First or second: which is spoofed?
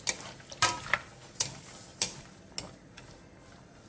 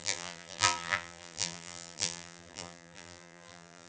second